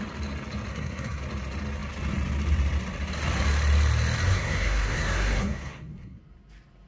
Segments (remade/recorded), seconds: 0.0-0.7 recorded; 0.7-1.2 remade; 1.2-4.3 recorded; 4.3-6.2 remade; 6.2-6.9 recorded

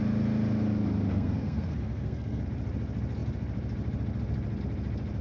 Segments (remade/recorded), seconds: 0.0-1.1 recorded; 1.1-2.4 remade; 2.4-5.2 recorded

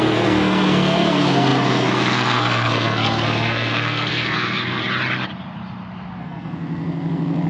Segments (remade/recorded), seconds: 0.0-4.8 remade; 4.8-6.2 recorded; 6.2-7.5 remade

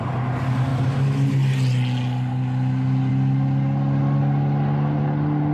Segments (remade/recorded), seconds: 0.0-5.5 recorded

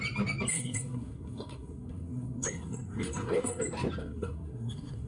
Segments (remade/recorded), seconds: 0.0-0.5 recorded; 0.5-3.6 remade; 3.6-4.0 recorded; 4.0-5.1 remade

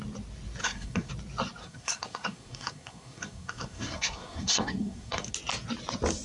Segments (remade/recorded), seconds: 0.0-0.6 recorded; 0.6-1.1 remade; 1.1-1.6 recorded; 1.6-5.3 remade; 5.3-6.2 recorded